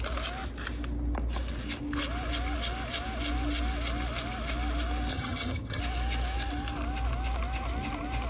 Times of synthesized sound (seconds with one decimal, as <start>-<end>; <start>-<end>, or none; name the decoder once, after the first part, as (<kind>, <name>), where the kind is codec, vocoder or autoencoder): 5.1-5.8 (vocoder, HiFi-GAN)